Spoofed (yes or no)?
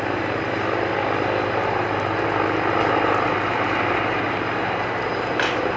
no